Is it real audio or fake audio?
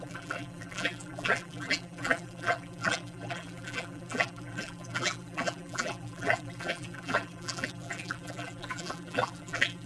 fake